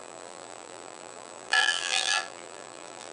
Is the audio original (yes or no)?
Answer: no